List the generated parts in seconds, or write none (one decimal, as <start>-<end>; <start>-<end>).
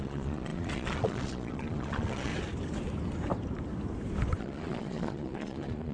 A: 0.0-2.3; 4.4-5.9